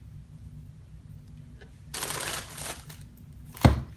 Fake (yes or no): no